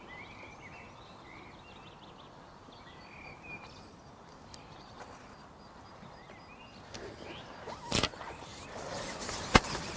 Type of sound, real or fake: fake